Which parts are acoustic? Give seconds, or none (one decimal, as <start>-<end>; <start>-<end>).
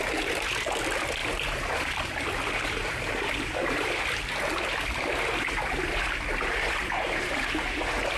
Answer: 0.0-8.2